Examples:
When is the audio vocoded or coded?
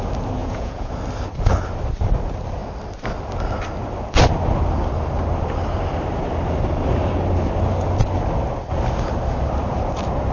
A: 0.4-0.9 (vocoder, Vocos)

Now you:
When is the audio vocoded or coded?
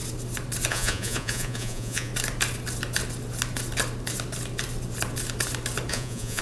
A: 0.7-2.1 (vocoder, Vocos); 5.9-6.4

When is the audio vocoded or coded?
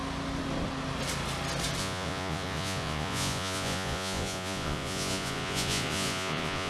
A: 1.8-6.7 (vocoder, Vocos)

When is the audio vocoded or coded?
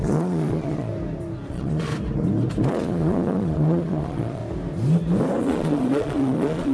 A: 0.0-0.9 (vocoder, Vocos); 1.5-1.9; 2.7-4.4; 5.4-6.7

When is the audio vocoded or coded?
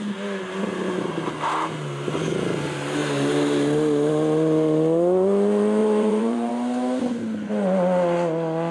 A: 5.8-6.5 (vocoder, Vocos)